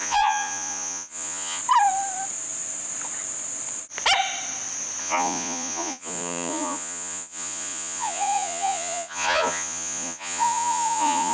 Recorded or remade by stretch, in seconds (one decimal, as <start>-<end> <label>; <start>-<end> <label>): 0.0-1.6 remade; 1.6-5.0 recorded; 5.0-11.3 remade